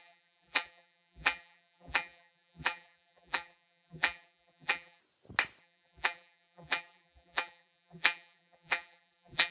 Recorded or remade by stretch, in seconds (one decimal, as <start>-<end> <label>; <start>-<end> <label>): 0.0-5.0 remade; 5.0-5.6 recorded; 5.6-9.5 remade